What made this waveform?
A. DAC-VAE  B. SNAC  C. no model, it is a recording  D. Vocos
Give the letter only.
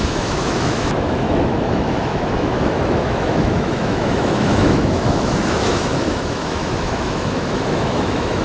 A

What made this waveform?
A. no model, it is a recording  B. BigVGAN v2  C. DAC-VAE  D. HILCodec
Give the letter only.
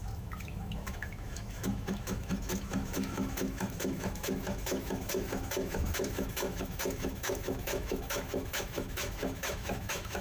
C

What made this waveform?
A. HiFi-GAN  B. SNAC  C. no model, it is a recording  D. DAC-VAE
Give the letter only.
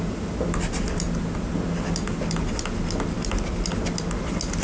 C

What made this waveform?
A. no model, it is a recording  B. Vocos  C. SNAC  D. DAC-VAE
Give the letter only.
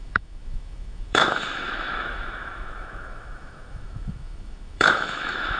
D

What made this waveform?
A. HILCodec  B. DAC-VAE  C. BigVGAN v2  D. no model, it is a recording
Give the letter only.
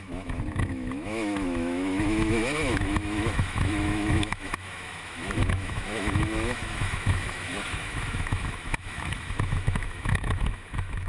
B